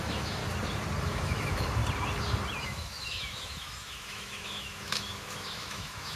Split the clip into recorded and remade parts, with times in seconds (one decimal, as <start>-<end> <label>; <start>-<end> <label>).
0.0-0.4 remade; 0.4-1.0 recorded; 1.0-1.8 remade; 1.8-2.6 recorded; 2.6-6.2 remade